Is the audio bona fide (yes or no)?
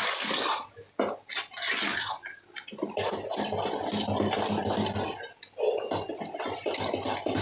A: yes